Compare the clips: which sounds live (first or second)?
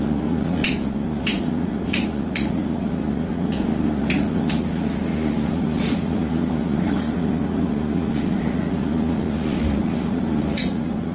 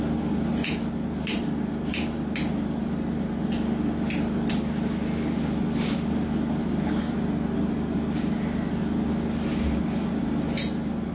second